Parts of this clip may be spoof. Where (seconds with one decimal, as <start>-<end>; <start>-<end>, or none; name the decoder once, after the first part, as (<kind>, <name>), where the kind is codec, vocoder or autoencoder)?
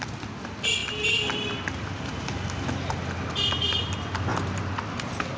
none